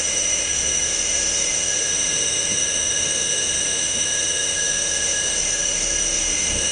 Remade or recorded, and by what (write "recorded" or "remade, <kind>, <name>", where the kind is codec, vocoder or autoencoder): remade, autoencoder, DAC-VAE